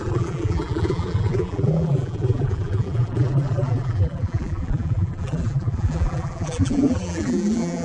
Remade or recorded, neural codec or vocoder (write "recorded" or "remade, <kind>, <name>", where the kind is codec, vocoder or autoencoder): remade, vocoder, BigVGAN v2